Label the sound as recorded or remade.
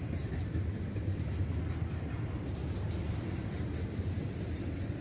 recorded